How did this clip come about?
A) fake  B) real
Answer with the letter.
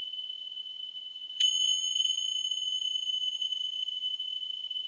A